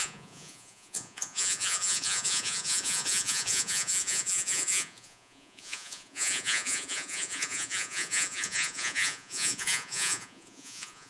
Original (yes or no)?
no